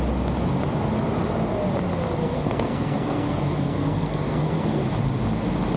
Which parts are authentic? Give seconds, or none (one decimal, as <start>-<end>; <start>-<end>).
0.0-2.2; 4.9-5.8